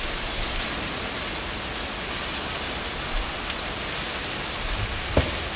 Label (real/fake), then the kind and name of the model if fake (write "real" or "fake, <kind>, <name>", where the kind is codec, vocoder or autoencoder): real